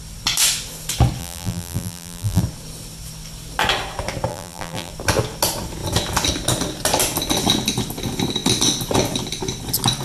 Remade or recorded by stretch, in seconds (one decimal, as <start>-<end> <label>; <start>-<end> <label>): 0.0-1.2 recorded; 1.2-2.4 remade; 2.4-4.3 recorded; 4.3-4.9 remade; 4.9-10.0 recorded